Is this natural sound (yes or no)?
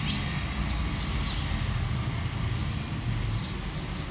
yes